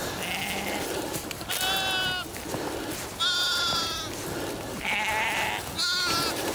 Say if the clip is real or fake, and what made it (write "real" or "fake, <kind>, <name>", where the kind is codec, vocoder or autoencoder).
real